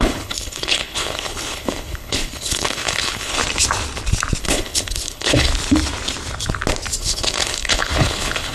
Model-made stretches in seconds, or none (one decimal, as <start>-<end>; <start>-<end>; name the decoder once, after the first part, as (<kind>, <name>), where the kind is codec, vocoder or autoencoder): 0.0-3.4 (codec, HILCodec); 4.4-5.5; 7.0-8.5

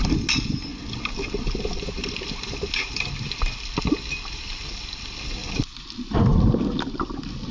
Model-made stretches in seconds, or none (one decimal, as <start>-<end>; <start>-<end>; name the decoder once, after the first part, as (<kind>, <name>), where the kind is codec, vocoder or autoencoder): 0.7-3.1 (vocoder, BigVGAN v2); 5.4-6.3

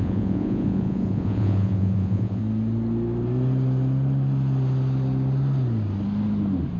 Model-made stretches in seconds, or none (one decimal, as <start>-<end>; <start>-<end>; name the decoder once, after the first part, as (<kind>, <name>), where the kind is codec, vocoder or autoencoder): 0.0-2.4 (vocoder, Vocos)

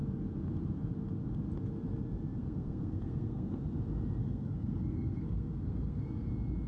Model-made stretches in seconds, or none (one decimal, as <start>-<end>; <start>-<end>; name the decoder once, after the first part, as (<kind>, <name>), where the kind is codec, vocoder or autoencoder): 2.4-3.6 (codec, SNAC); 4.2-6.3